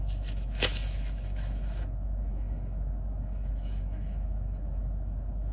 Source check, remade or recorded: remade